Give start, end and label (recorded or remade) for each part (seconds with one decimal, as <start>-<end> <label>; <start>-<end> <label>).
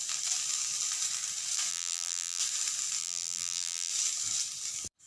0.0-1.7 recorded; 1.7-2.4 remade; 2.4-3.0 recorded; 3.0-3.9 remade; 3.9-5.1 recorded